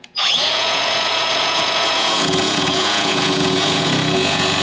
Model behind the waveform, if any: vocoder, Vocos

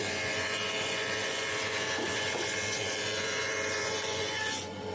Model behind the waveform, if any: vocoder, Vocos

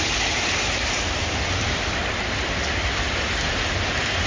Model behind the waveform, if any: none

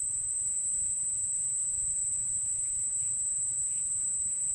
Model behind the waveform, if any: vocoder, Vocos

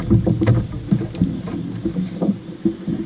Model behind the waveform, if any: none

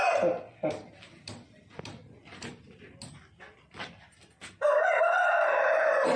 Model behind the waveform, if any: none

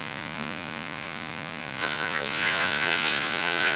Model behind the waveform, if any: vocoder, Vocos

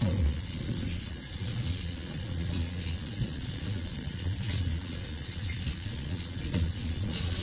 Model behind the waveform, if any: vocoder, Vocos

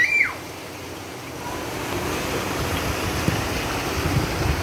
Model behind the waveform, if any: none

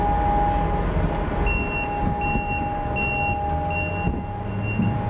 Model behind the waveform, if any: none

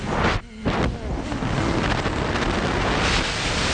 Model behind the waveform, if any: none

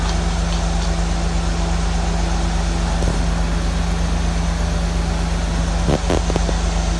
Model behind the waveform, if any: none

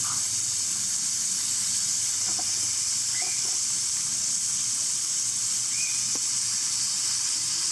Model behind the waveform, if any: none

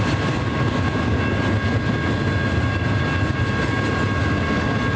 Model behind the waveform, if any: none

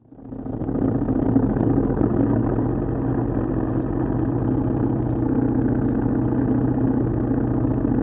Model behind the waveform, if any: none